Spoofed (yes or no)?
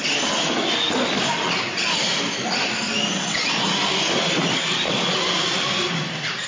no